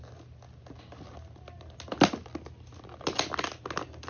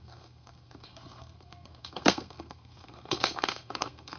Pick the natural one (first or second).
first